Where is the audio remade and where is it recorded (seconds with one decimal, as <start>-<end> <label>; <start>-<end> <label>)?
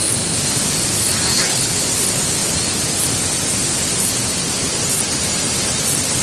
0.0-1.3 recorded; 1.3-1.8 remade; 1.8-6.2 recorded